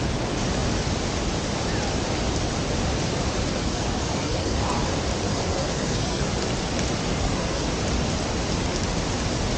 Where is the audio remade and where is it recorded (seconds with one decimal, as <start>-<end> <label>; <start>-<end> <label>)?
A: 0.0-3.6 recorded; 3.6-4.6 remade; 4.6-5.3 recorded; 5.3-6.3 remade; 6.3-7.1 recorded; 7.1-7.7 remade; 7.7-9.6 recorded